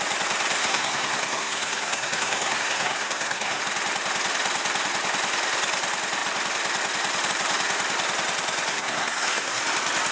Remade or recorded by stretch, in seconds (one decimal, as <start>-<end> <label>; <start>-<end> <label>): 0.0-0.6 recorded; 0.6-3.6 remade; 3.6-8.7 recorded; 8.7-9.6 remade; 9.6-10.1 recorded